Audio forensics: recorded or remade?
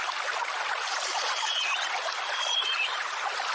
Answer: recorded